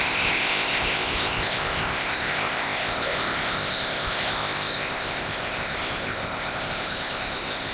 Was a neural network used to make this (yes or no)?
yes